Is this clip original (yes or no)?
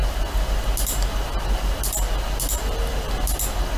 yes